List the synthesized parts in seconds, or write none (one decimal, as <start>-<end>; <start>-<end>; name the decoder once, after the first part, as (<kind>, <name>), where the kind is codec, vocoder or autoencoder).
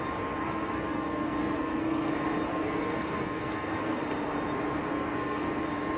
0.4-2.1 (codec, SNAC); 2.5-4.0; 4.9-5.6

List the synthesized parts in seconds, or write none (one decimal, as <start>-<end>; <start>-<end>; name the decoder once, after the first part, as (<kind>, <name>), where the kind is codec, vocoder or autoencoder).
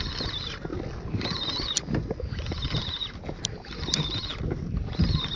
none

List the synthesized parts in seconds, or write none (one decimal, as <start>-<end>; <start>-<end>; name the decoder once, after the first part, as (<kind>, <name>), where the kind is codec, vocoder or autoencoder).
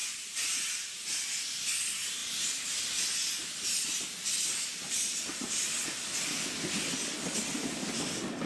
0.0-1.2 (vocoder, BigVGAN v2); 3.4-5.6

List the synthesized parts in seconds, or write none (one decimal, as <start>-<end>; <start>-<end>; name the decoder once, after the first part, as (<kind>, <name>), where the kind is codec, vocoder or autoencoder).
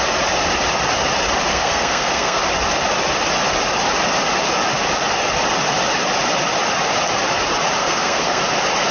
1.5-2.4 (codec, SNAC); 7.8-8.4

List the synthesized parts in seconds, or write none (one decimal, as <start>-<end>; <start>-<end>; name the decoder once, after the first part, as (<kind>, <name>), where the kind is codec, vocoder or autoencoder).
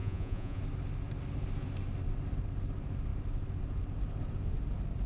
0.0-0.6 (vocoder, Vocos)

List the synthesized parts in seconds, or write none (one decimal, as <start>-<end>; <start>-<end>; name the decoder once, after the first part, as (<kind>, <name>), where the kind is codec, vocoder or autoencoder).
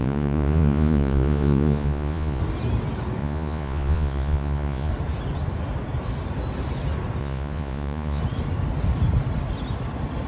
0.0-2.4 (vocoder, Vocos); 3.2-4.9; 7.2-8.2